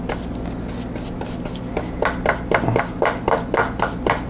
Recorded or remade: recorded